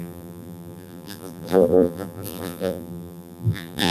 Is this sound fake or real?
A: fake